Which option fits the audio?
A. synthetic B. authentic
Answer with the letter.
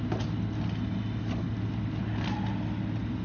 B